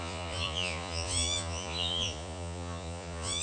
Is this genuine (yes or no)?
no